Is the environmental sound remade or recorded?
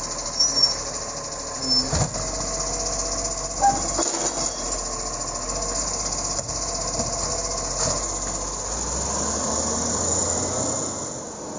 recorded